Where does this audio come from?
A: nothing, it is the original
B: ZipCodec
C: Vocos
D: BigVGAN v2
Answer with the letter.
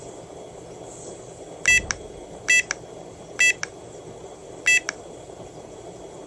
A